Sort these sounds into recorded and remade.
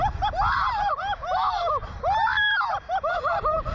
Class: recorded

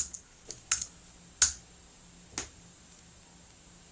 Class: recorded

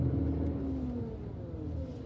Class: recorded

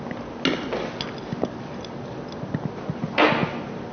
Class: recorded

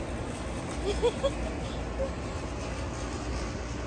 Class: recorded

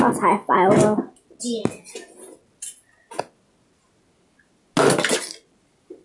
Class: recorded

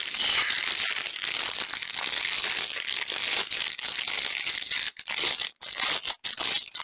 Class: recorded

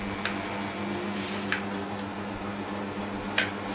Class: recorded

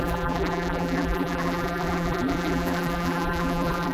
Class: remade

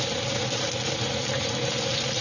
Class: recorded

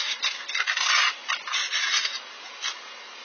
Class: recorded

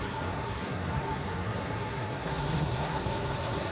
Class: remade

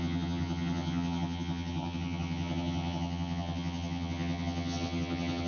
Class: remade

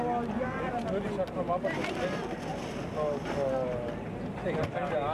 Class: recorded